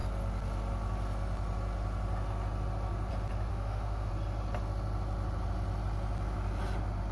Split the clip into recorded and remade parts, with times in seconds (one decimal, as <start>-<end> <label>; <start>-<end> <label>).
0.0-3.5 recorded; 3.5-4.1 remade; 4.1-7.1 recorded